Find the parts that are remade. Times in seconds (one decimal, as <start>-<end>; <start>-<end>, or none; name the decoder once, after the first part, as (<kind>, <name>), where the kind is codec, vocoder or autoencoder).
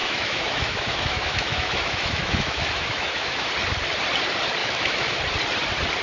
0.0-3.5 (autoencoder, DAC-VAE); 4.6-5.2